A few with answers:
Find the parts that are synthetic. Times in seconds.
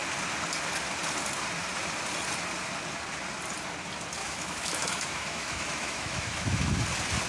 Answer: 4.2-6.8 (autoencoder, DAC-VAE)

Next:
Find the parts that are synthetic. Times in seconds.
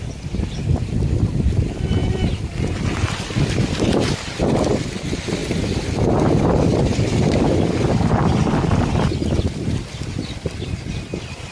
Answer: none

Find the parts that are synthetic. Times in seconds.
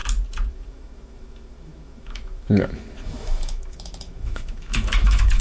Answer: 0.5-5.4 (autoencoder, DAC-VAE)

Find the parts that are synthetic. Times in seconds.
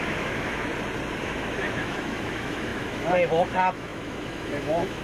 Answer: 0.0-0.7 (autoencoder, DAC-VAE); 1.2-5.0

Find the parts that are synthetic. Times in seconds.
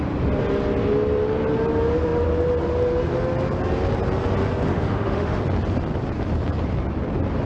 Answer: 4.7-5.4 (autoencoder, DAC-VAE)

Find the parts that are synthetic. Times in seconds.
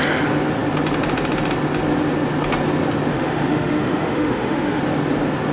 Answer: 3.1-4.8 (autoencoder, DAC-VAE)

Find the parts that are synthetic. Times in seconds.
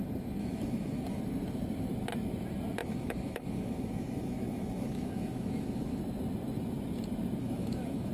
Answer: 0.4-1.2 (autoencoder, DAC-VAE); 2.8-6.0; 7.4-8.1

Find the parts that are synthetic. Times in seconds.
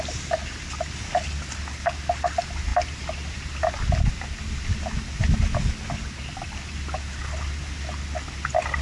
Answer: none